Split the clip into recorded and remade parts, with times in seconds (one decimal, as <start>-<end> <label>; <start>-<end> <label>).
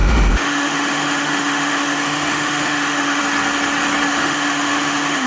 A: 0.0-3.2 remade; 3.2-4.2 recorded; 4.2-5.3 remade